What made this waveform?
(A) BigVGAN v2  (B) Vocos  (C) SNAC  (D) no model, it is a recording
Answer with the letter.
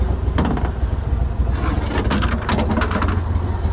D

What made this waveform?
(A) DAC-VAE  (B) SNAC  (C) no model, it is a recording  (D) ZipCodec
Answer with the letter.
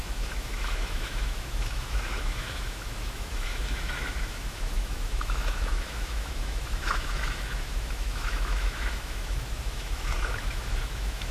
A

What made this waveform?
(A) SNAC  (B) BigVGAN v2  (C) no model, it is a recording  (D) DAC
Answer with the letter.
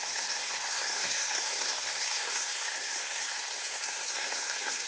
A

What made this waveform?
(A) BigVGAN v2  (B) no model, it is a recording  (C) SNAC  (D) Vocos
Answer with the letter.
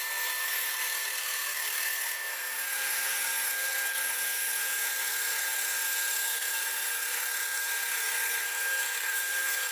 C